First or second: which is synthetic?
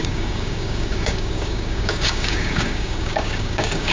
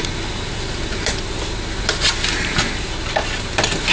first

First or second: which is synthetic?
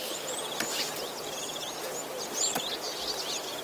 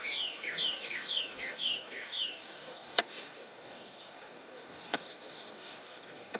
second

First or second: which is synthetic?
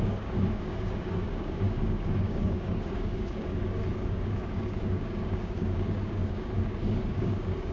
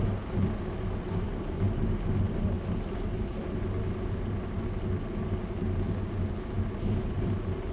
first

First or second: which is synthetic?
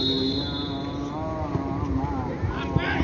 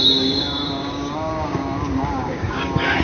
second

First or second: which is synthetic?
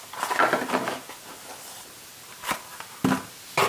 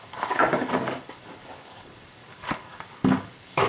second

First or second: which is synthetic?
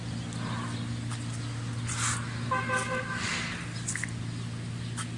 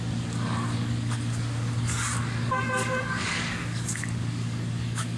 second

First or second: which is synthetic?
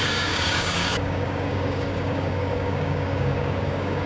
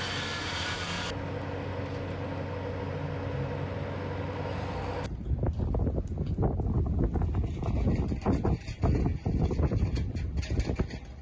first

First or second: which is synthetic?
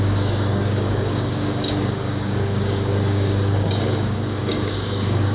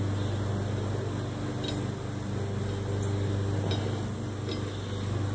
first